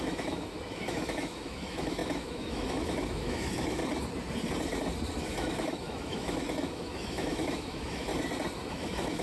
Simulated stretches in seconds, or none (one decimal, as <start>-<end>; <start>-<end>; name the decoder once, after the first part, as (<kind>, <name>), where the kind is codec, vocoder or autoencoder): 0.0-3.8 (autoencoder, DAC-VAE); 5.2-8.1; 8.7-9.2